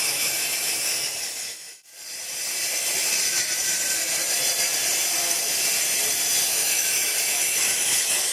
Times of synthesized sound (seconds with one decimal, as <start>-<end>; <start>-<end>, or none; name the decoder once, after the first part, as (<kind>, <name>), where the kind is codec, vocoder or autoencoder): 0.0-0.4 (autoencoder, DAC-VAE); 1.4-1.9; 6.5-8.3